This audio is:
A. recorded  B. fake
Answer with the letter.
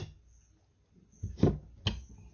A